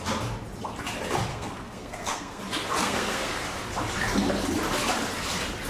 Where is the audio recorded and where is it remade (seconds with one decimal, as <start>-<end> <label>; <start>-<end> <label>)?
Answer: 0.0-1.3 recorded; 1.3-2.4 remade; 2.4-2.8 recorded; 2.8-3.4 remade; 3.4-5.7 recorded